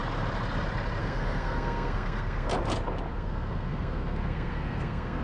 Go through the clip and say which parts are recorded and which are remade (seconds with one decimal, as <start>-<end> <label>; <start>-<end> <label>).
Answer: 0.0-1.0 recorded; 1.0-2.5 remade; 2.5-3.1 recorded; 3.1-5.2 remade